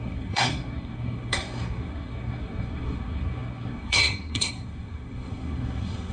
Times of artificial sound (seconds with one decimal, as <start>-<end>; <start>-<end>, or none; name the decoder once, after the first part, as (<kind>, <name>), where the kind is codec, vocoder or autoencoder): 0.0-6.1 (codec, SNAC)

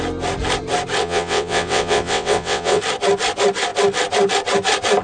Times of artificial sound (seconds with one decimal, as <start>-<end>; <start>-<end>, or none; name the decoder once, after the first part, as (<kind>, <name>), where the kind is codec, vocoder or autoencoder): 1.0-2.8 (vocoder, WaveNeXt)

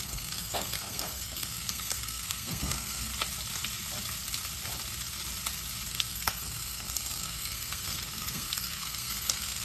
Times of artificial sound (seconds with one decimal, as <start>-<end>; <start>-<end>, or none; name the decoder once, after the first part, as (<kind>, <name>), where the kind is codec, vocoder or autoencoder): 0.0-3.1 (codec, SNAC); 5.9-9.6

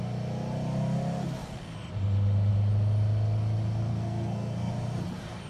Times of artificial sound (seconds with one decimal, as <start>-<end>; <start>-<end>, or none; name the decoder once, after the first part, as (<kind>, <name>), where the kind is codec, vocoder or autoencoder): 3.9-4.7 (codec, SNAC)

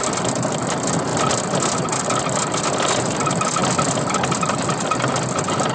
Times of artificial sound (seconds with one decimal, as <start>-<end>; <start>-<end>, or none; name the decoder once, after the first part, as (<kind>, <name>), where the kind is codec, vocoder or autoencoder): none

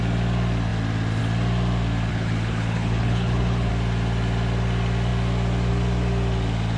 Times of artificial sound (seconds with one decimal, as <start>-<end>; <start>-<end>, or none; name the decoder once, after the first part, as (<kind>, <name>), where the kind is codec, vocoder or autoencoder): 2.1-3.7 (codec, HILCodec)

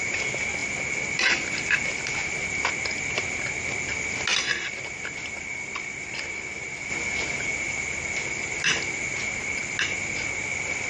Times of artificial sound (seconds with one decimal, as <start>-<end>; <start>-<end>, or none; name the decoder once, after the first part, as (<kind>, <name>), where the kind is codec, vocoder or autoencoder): none